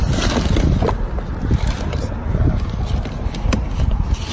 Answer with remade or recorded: recorded